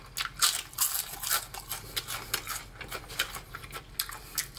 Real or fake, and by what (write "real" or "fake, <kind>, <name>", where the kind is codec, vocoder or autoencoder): real